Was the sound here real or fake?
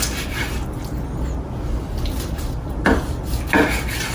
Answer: real